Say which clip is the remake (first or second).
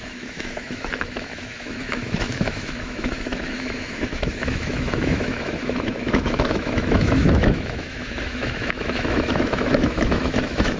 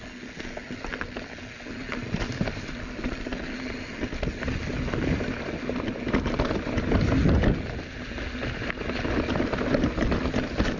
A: first